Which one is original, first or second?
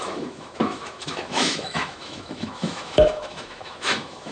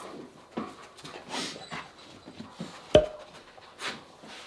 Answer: second